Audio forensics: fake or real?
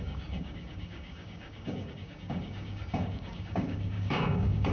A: fake